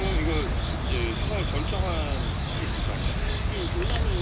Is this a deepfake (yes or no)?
no